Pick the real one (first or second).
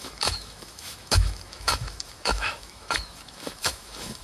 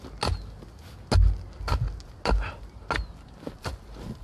second